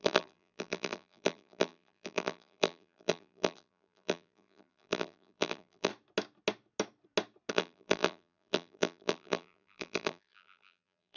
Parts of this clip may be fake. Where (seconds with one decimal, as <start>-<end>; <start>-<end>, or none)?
0.0-5.9; 7.5-11.2